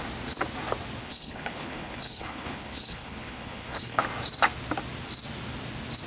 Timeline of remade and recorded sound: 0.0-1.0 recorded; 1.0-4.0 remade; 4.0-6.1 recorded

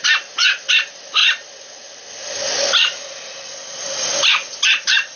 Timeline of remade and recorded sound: 0.0-5.2 recorded

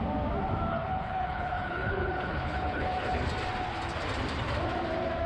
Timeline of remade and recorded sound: 0.0-0.7 recorded; 0.7-3.2 remade; 3.2-5.3 recorded

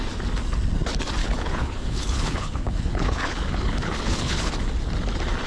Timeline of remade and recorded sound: 0.0-1.2 recorded; 1.2-4.5 remade; 4.5-5.5 recorded

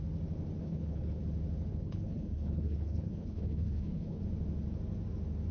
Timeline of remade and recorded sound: 0.0-0.6 recorded; 0.6-1.2 remade; 1.2-1.7 recorded; 1.7-4.2 remade; 4.2-5.5 recorded

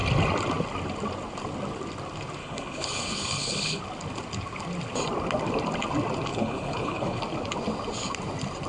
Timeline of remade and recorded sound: 0.0-2.4 recorded; 2.4-3.8 remade; 3.8-6.3 recorded; 6.3-7.2 remade; 7.2-8.7 recorded

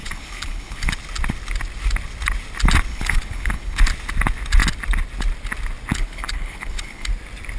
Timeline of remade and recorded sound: 0.0-0.9 remade; 0.9-2.9 recorded; 2.9-3.8 remade; 3.8-5.9 recorded; 5.9-7.1 remade; 7.1-7.6 recorded

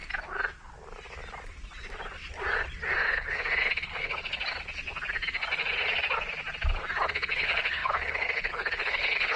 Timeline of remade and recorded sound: 0.0-3.1 recorded; 3.1-4.4 remade; 4.4-7.1 recorded; 7.1-9.4 remade